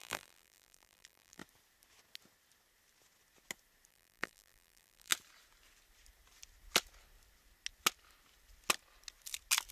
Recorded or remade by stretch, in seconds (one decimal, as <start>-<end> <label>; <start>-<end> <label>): 0.0-1.4 remade; 1.4-3.9 recorded; 3.9-5.1 remade; 5.1-9.7 recorded